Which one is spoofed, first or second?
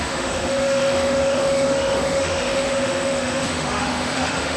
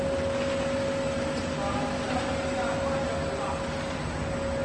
first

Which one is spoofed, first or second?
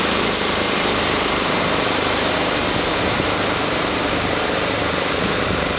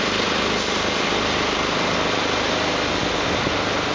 first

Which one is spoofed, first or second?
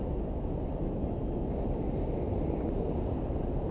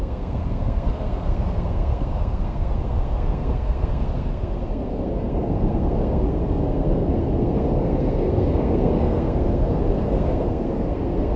second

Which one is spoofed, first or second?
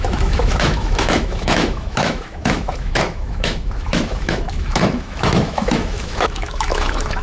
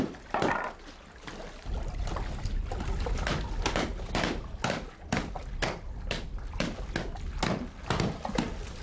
first